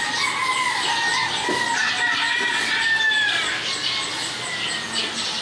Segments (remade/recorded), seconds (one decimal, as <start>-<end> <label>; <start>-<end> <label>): 0.0-5.4 recorded